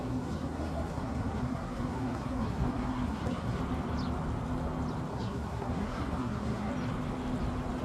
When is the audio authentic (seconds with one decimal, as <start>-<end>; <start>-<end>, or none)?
3.6-5.1; 6.7-7.8

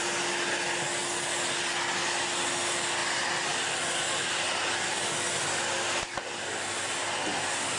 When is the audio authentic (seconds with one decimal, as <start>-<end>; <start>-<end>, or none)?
0.0-7.8

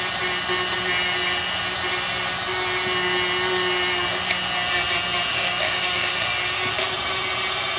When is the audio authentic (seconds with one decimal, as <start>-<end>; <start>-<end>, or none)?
0.0-5.3; 6.1-7.8

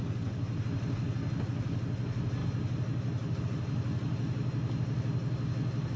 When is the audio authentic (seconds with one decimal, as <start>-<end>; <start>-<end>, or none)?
0.0-6.0

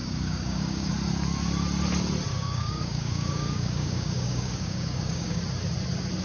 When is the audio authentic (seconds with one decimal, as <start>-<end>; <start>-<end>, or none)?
0.9-2.3; 5.4-6.2

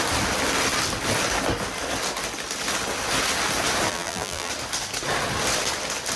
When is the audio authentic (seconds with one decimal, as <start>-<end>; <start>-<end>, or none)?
0.0-3.9; 4.5-6.2

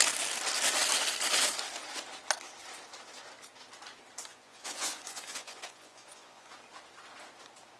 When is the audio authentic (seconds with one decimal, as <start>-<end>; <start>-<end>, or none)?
0.0-4.3; 6.5-7.8

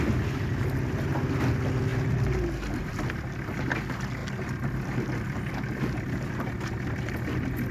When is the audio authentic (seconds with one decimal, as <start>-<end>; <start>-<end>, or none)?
0.0-7.7